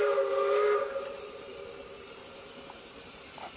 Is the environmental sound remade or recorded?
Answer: recorded